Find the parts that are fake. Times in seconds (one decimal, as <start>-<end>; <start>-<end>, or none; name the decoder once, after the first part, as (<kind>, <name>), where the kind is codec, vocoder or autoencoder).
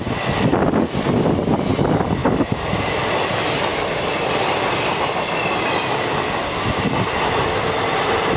none